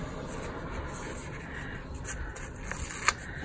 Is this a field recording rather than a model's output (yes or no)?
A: yes